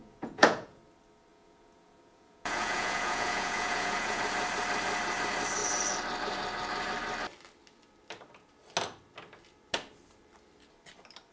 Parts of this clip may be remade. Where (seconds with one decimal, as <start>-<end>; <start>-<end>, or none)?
0.0-0.8; 1.3-4.2

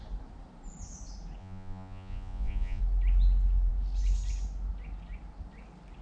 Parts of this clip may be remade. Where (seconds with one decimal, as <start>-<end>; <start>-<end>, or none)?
1.4-2.8